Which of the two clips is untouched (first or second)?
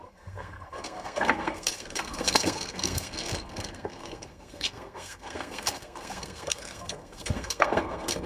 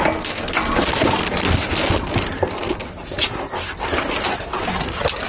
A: second